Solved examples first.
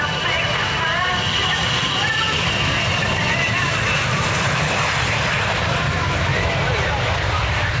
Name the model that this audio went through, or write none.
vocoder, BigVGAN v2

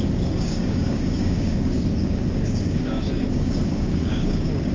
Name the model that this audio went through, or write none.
codec, DAC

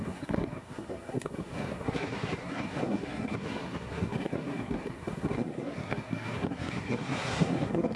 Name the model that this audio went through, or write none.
codec, SNAC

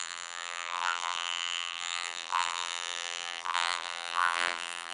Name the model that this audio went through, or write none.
vocoder, BigVGAN v2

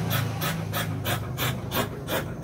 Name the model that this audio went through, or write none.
none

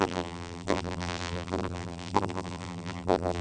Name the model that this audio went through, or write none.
vocoder, BigVGAN v2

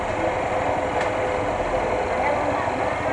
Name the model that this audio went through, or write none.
none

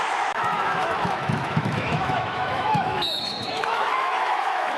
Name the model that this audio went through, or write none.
autoencoder, DAC-VAE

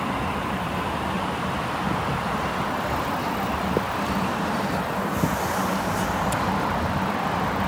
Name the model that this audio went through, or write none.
none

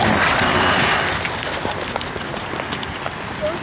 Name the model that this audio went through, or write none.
none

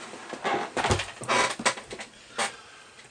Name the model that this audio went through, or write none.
none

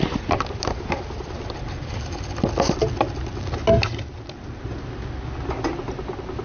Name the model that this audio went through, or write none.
none